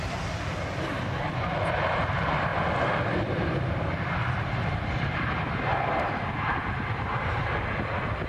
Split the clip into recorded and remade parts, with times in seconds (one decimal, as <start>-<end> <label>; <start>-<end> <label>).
0.0-2.5 recorded; 2.5-6.9 remade; 6.9-8.3 recorded